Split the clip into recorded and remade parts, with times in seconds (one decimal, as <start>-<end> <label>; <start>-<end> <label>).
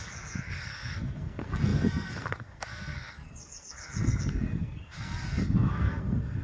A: 0.0-6.4 remade